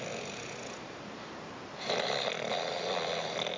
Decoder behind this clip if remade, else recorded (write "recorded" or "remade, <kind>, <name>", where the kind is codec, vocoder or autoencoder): recorded